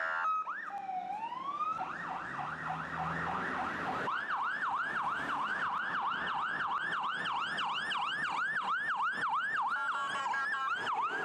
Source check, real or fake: real